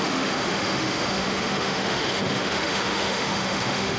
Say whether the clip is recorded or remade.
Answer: remade